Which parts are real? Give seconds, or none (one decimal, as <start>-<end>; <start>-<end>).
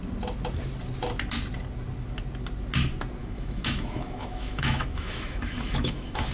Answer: 0.0-3.2